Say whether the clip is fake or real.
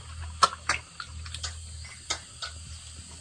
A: real